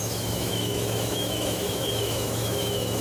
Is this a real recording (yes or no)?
no